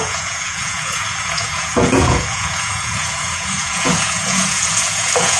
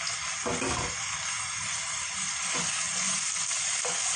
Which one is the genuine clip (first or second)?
second